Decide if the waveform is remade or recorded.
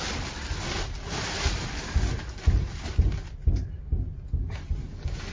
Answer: recorded